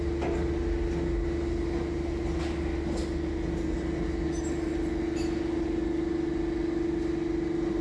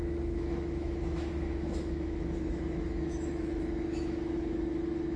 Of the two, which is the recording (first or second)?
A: first